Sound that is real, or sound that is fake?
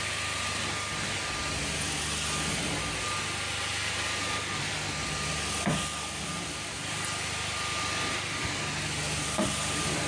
real